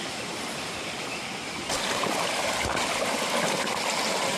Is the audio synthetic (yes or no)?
no